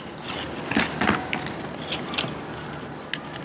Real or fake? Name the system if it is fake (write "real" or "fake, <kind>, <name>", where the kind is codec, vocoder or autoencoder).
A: real